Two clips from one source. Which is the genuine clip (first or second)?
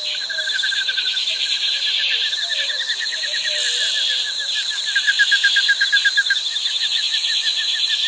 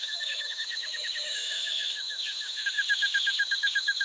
first